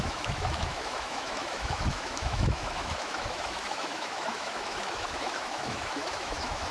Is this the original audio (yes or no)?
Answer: no